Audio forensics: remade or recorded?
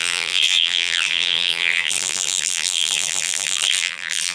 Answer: remade